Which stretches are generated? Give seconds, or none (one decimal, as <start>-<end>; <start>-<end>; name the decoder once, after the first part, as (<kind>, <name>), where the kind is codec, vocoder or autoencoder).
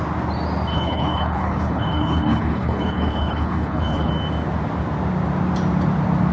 0.7-4.1 (codec, HILCodec)